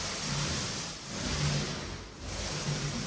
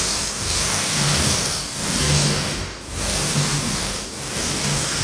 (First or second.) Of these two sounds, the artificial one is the second